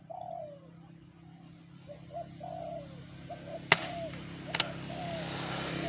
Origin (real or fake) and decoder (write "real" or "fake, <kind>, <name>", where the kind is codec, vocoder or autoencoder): real